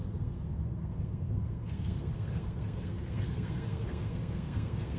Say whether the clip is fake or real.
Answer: fake